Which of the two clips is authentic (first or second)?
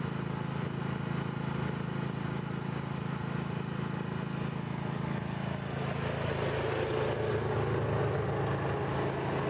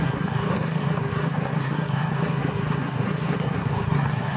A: first